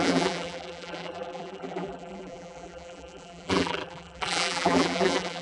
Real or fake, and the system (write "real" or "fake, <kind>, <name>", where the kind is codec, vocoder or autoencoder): fake, vocoder, BigVGAN v2